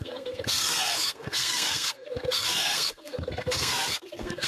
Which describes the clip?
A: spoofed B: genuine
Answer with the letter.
A